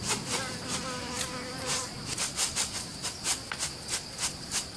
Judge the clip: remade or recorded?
recorded